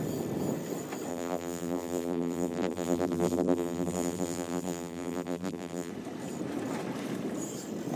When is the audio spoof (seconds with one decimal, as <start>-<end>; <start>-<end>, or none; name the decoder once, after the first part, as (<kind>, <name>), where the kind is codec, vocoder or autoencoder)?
1.1-5.9 (vocoder, BigVGAN v2)